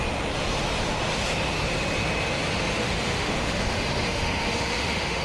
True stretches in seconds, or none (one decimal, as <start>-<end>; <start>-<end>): 0.0-2.8